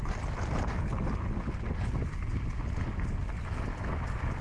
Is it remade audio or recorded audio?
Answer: recorded